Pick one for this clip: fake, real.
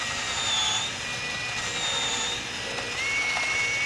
real